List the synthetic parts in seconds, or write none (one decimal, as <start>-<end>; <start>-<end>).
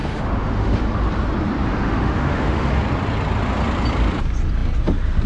0.0-0.8; 1.7-2.7